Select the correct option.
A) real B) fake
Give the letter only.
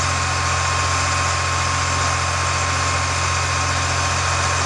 A